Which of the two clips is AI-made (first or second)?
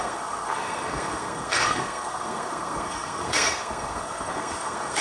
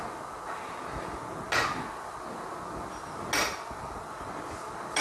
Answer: first